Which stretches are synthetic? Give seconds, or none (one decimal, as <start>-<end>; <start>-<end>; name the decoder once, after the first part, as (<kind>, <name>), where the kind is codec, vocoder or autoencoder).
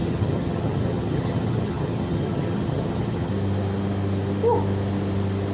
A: 0.0-3.3 (vocoder, HiFi-GAN)